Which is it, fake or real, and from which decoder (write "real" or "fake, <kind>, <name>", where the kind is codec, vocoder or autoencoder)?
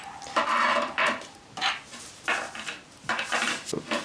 real